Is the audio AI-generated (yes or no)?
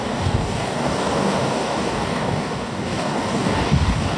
yes